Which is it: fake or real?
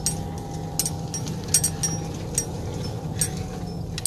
real